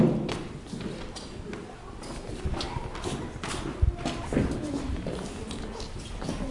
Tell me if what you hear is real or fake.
real